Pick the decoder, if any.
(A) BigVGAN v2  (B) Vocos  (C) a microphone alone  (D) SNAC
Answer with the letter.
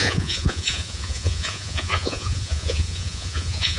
B